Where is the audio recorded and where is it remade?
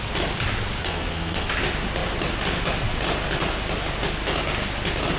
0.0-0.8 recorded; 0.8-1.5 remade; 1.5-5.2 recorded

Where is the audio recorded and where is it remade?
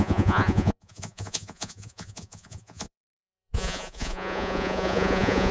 0.0-5.5 remade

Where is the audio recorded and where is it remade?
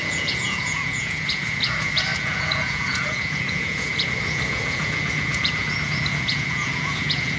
0.0-7.4 remade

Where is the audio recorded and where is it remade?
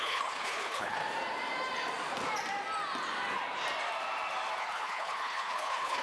0.0-1.0 remade; 1.0-4.6 recorded; 4.6-6.0 remade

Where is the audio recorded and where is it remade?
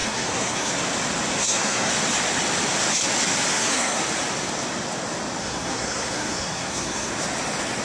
0.0-0.7 remade; 0.7-1.4 recorded; 1.4-1.9 remade; 1.9-3.5 recorded; 3.5-4.0 remade; 4.0-5.4 recorded; 5.4-7.1 remade; 7.1-7.8 recorded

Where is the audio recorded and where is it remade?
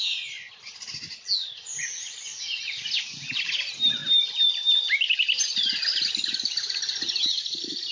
0.0-1.4 recorded; 1.4-3.3 remade; 3.3-7.9 recorded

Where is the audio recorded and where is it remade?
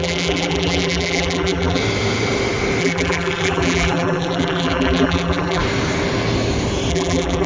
0.0-1.8 remade; 1.8-2.8 recorded; 2.8-5.6 remade; 5.6-6.9 recorded; 6.9-7.5 remade